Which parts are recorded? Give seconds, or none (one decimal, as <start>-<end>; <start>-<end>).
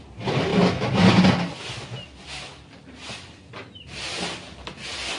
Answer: 0.0-5.2